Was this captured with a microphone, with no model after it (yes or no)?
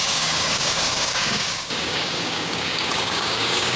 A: no